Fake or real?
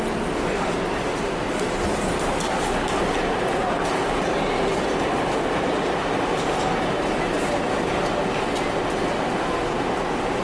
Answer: real